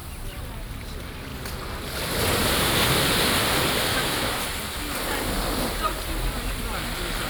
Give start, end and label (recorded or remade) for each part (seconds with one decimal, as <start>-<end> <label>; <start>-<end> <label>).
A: 0.0-3.9 recorded; 3.9-4.4 remade; 4.4-7.3 recorded